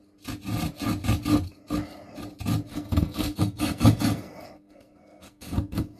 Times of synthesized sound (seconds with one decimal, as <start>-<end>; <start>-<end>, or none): 2.7-6.0